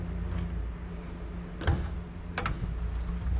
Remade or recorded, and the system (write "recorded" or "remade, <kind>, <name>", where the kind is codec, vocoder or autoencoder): recorded